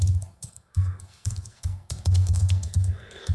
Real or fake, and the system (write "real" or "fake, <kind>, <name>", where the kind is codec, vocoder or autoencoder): fake, codec, SNAC